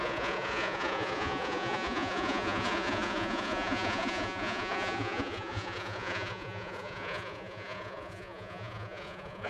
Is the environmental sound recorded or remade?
remade